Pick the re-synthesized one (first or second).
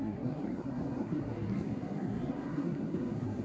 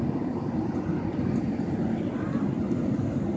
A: first